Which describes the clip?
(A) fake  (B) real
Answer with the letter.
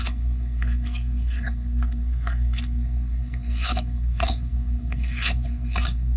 A